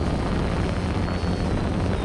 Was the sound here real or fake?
real